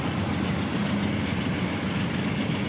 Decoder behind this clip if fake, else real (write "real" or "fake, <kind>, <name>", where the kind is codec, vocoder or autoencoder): real